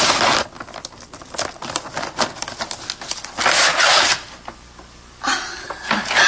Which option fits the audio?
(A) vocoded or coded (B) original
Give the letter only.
B